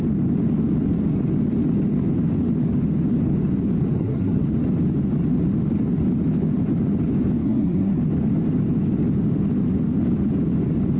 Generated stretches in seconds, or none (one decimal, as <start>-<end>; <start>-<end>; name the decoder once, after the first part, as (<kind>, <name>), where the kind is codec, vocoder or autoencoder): 3.9-4.5 (codec, SNAC); 7.4-8.0